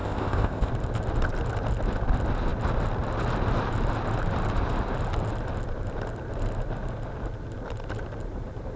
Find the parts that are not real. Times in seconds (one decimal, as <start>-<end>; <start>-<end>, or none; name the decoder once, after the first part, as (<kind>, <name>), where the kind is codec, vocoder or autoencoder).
0.0-0.7 (codec, ZipCodec)